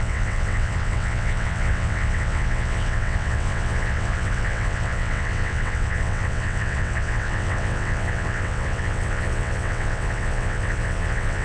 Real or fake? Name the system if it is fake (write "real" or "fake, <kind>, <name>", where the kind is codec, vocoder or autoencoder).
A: fake, vocoder, WaveNeXt